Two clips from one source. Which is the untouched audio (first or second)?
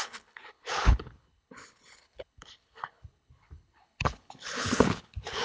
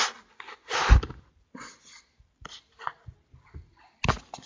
second